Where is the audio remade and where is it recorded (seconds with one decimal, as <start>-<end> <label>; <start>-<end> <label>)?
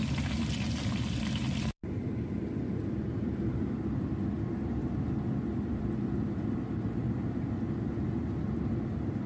0.0-3.6 remade; 3.6-9.3 recorded